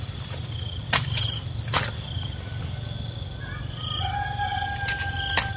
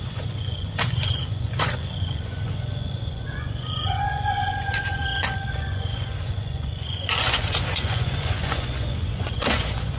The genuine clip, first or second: first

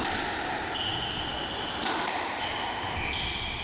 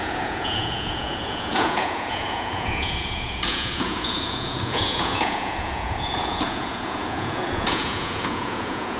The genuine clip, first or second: first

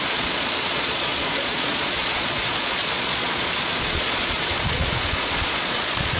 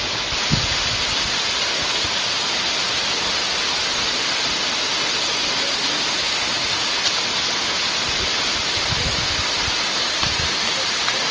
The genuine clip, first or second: second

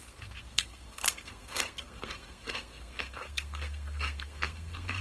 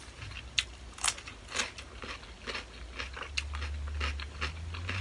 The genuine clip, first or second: second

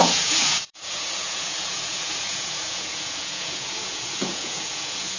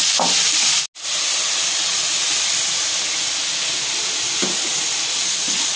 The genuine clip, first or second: second